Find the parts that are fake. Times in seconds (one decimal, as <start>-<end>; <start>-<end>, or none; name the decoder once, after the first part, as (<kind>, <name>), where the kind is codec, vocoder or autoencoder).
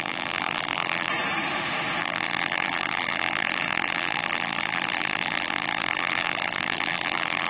0.0-1.1 (vocoder, BigVGAN v2); 2.0-7.5